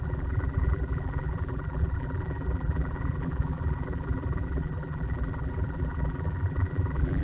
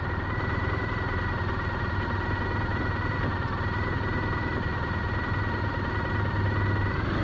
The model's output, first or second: first